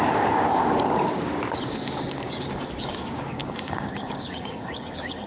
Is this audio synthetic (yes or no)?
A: yes